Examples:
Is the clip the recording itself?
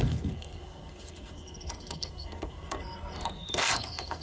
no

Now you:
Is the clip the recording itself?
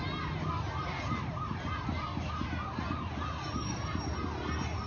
yes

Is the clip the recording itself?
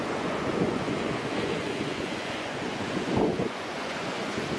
no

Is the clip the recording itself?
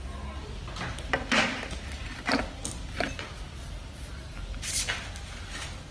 yes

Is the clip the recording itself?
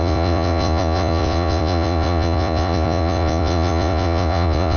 no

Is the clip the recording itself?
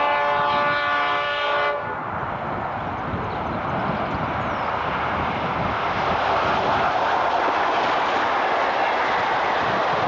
yes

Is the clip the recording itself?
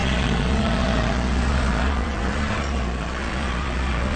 no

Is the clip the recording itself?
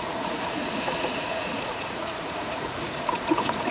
no